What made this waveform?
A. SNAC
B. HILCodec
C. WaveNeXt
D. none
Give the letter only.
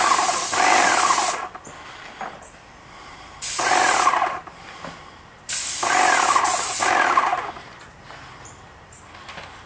D